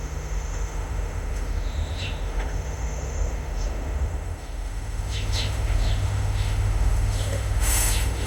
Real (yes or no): no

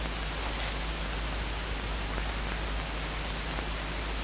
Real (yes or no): yes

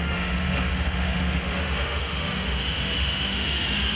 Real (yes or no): no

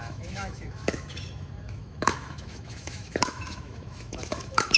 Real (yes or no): no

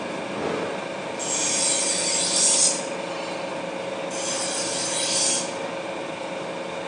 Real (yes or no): yes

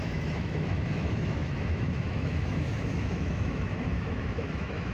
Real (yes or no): no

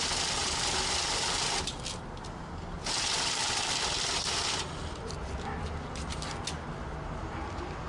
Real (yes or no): yes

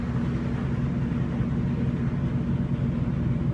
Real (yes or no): yes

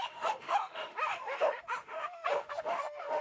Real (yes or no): no